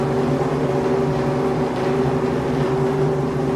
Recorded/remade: recorded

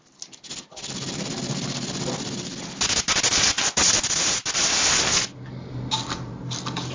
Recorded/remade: recorded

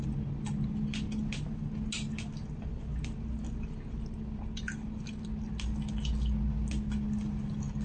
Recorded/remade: recorded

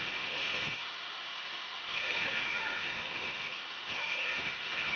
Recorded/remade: remade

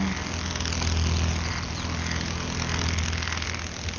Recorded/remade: recorded